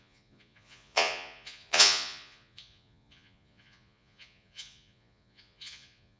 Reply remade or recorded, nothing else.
remade